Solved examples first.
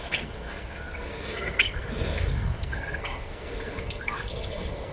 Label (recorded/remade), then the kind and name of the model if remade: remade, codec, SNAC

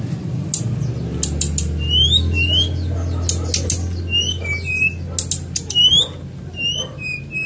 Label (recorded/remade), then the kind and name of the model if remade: recorded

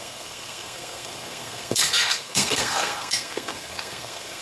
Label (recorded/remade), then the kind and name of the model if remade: remade, codec, SNAC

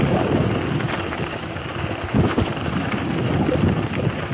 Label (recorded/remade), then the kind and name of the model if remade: recorded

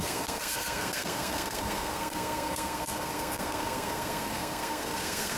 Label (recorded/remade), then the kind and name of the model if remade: remade, codec, SNAC